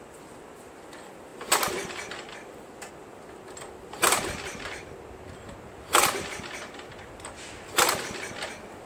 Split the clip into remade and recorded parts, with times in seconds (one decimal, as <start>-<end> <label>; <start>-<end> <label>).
0.0-1.3 recorded; 1.3-2.9 remade; 2.9-8.9 recorded